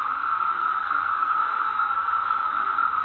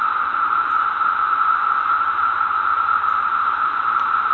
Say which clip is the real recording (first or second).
second